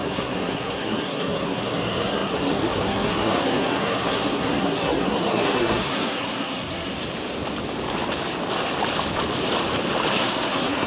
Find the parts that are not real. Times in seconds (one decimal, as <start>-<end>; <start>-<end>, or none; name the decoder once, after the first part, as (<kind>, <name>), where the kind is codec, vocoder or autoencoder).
0.0-6.9 (codec, SNAC); 10.2-10.9